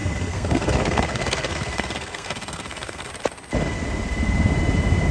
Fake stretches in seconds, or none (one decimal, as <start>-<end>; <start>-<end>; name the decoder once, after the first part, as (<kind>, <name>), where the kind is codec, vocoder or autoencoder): 0.0-3.1 (codec, SNAC)